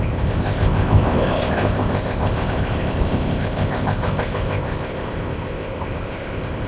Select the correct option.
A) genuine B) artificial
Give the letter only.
B